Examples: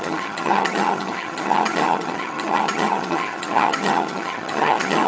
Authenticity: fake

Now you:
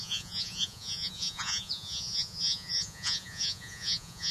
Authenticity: fake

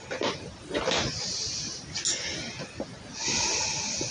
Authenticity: real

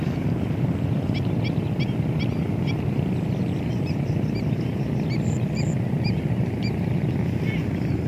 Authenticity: real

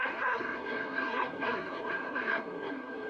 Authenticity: fake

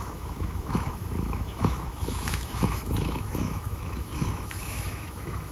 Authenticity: fake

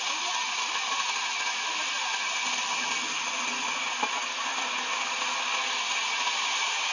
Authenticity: real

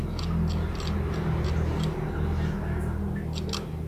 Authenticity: real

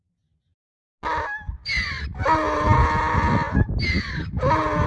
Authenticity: real